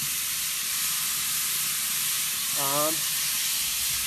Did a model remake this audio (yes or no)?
no